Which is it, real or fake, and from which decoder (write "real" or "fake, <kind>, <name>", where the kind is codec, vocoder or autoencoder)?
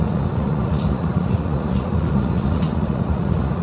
fake, vocoder, Vocos